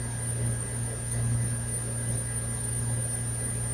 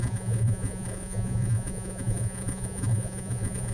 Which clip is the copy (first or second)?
second